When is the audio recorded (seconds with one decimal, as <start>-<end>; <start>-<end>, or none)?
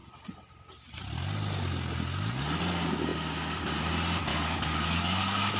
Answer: 0.0-4.3